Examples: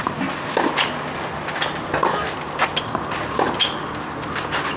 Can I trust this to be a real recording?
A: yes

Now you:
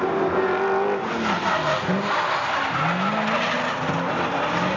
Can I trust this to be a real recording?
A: yes